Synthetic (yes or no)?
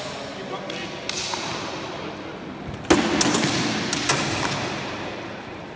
no